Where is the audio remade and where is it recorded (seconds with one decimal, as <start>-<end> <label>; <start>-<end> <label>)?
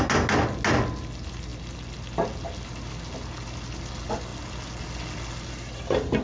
0.0-6.2 recorded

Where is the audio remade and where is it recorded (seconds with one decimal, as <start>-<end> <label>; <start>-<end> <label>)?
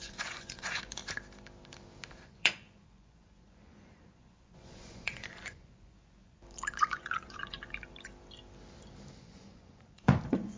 0.0-1.0 remade; 1.0-2.1 recorded; 2.1-8.1 remade; 8.1-9.2 recorded; 9.2-10.6 remade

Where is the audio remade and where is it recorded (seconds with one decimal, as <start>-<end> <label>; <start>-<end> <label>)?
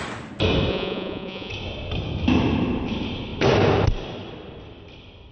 0.0-0.7 recorded; 0.7-1.5 remade; 1.5-5.3 recorded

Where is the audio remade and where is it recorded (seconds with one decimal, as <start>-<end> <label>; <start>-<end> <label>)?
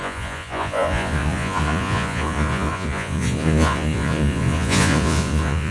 0.0-5.7 remade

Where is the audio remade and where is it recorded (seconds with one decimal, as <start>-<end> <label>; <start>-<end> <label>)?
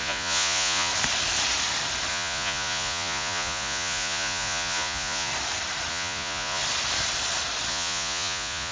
0.0-0.9 remade; 0.9-2.1 recorded; 2.1-5.3 remade; 5.3-5.9 recorded; 5.9-6.6 remade; 6.6-7.7 recorded; 7.7-8.7 remade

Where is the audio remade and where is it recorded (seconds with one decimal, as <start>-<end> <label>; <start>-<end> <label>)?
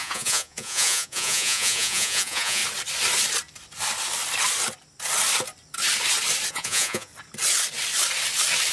0.0-2.6 remade; 2.6-6.5 recorded; 6.5-7.1 remade; 7.1-8.7 recorded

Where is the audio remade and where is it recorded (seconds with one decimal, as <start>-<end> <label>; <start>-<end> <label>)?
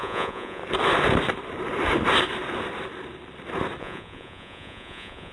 0.0-0.6 remade; 0.6-3.8 recorded; 3.8-5.3 remade